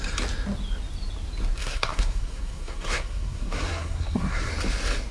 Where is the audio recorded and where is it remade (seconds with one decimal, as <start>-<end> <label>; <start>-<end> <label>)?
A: 0.0-1.6 recorded; 1.6-4.5 remade; 4.5-5.1 recorded